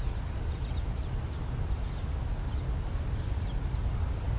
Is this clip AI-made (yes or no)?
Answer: no